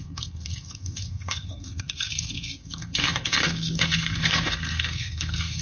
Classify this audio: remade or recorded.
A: remade